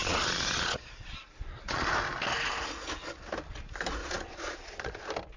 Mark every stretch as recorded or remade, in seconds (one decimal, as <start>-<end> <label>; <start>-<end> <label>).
0.0-1.9 remade; 1.9-4.0 recorded; 4.0-5.0 remade; 5.0-5.4 recorded